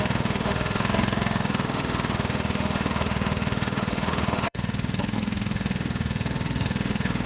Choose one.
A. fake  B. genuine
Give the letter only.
A